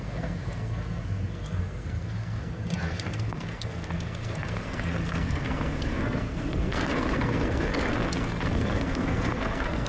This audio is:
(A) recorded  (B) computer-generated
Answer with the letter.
B